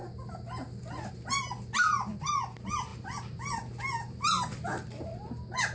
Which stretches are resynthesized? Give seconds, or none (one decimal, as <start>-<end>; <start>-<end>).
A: none